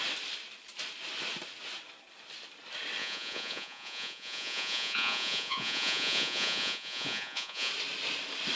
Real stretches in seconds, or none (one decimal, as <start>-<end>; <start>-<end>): 0.0-3.0; 7.7-8.6